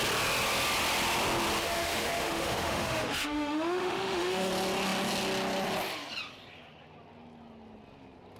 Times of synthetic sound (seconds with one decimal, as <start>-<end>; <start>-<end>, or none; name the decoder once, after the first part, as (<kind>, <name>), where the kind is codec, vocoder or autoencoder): 1.6-4.5 (autoencoder, DAC-VAE)